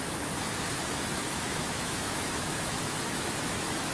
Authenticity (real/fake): fake